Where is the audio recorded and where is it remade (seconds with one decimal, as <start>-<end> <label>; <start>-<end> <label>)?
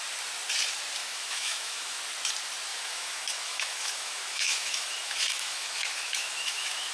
0.0-1.0 recorded; 1.0-2.0 remade; 2.0-2.7 recorded; 2.7-6.9 remade